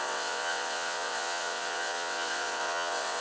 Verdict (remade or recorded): remade